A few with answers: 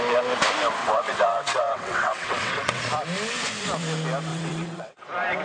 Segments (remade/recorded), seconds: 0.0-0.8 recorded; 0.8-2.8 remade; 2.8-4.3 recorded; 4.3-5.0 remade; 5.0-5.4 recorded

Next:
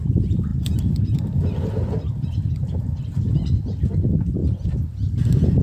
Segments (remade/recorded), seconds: 0.0-0.5 recorded; 0.5-3.0 remade; 3.0-5.6 recorded